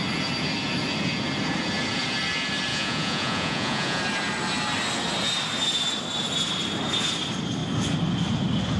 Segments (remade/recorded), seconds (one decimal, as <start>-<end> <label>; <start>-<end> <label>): 0.0-2.7 recorded; 2.7-4.0 remade; 4.0-8.8 recorded